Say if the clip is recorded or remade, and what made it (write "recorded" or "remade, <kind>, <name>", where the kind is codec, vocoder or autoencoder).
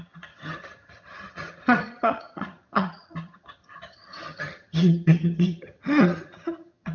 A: remade, vocoder, HiFi-GAN